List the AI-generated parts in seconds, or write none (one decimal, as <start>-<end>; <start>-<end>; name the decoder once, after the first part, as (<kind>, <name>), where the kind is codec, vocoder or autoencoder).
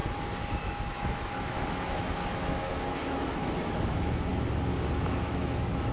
0.6-4.3 (autoencoder, DAC-VAE); 5.2-5.9